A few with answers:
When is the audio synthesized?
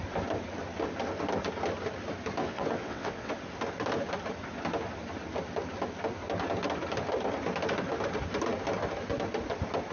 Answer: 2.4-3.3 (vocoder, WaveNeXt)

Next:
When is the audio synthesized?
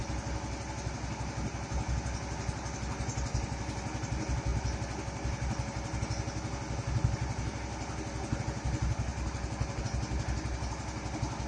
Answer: none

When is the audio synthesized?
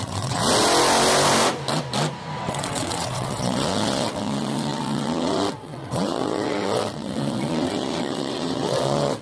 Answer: 0.0-0.4 (vocoder, WaveNeXt); 2.5-9.2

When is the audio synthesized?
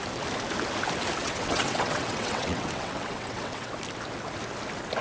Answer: 1.2-3.7 (vocoder, WaveNeXt)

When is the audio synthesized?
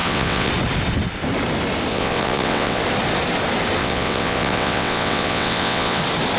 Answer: 0.0-0.5 (vocoder, WaveNeXt); 1.9-2.8; 3.8-6.0